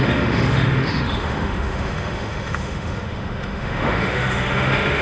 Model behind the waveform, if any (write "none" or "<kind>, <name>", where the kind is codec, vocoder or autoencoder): autoencoder, DAC-VAE